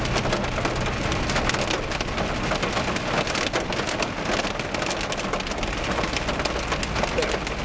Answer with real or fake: real